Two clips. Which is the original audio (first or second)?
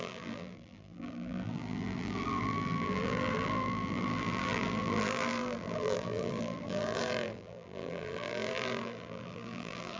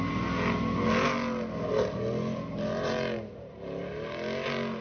second